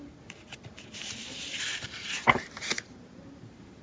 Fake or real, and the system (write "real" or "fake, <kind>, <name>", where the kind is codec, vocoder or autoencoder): fake, vocoder, BigVGAN v2